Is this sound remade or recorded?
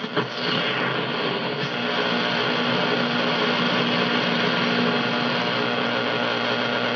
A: recorded